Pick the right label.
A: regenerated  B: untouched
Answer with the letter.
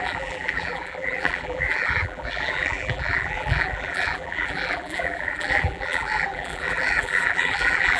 A